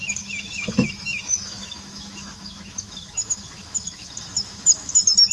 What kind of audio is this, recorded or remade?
remade